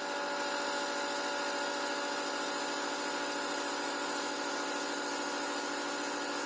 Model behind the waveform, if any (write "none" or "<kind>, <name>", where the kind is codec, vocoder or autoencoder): none